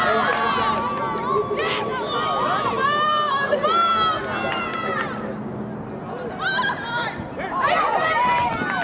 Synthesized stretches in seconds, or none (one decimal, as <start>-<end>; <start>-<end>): none